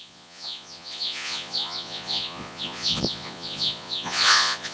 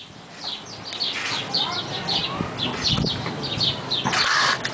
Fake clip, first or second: first